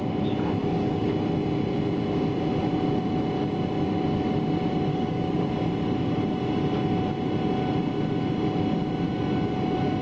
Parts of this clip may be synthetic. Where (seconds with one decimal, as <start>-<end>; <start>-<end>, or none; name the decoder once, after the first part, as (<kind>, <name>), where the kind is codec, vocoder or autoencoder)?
0.6-1.1 (codec, DAC); 4.9-5.5